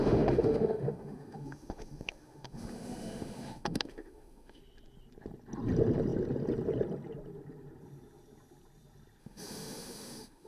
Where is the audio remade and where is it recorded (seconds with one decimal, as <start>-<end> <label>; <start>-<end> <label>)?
0.0-4.6 remade; 4.6-9.2 recorded; 9.2-10.5 remade